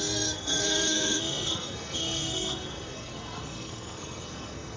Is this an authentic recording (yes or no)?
no